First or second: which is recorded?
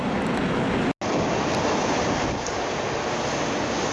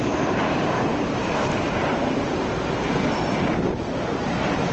first